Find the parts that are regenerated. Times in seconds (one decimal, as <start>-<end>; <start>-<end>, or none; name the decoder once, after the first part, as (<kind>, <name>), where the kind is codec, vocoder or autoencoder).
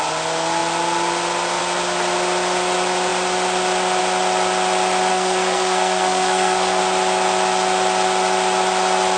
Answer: 5.1-6.8 (codec, SNAC)